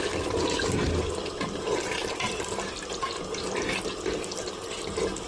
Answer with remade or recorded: recorded